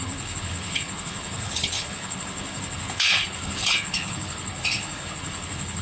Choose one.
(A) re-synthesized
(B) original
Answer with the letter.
A